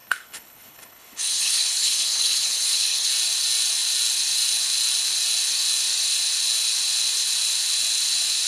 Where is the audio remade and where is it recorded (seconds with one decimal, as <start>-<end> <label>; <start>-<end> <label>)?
0.0-3.1 remade; 3.1-8.5 recorded